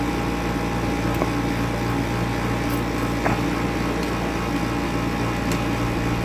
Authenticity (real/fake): real